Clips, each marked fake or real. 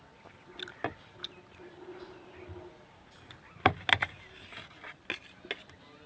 real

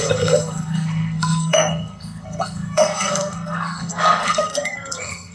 fake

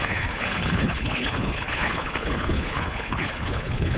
fake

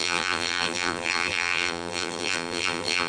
fake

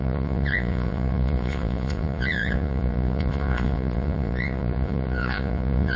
fake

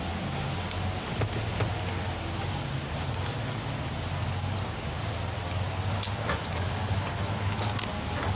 real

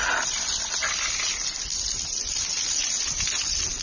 real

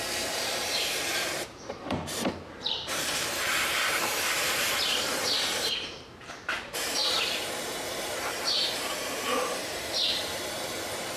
fake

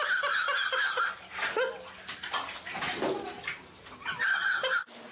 real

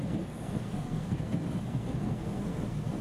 fake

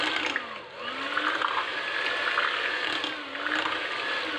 real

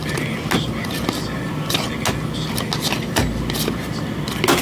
real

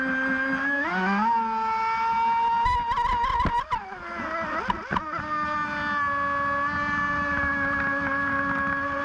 real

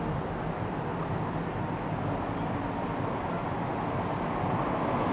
real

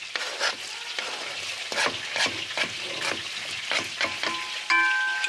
real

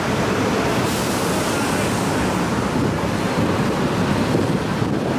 fake